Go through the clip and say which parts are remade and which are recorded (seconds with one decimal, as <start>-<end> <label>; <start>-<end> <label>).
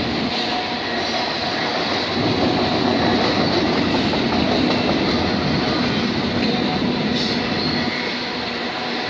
0.0-9.1 recorded